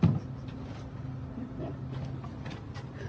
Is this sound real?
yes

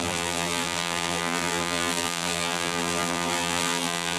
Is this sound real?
no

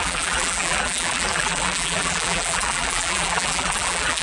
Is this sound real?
no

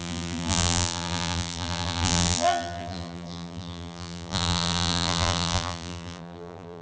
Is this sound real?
no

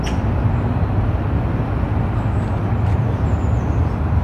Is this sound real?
yes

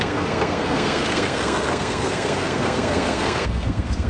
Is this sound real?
no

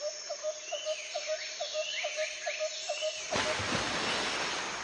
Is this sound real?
yes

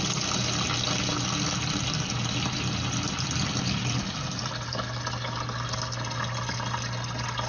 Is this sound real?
yes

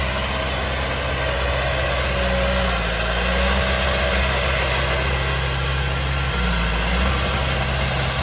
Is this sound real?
yes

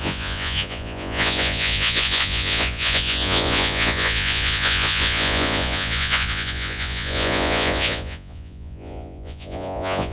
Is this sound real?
no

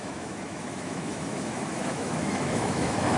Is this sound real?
no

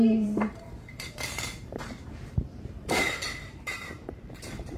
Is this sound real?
no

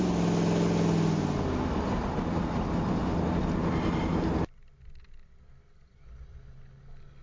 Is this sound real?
yes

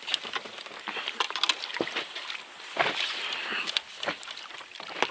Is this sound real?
yes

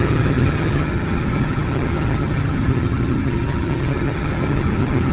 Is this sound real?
no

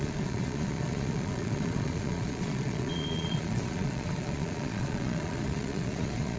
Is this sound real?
no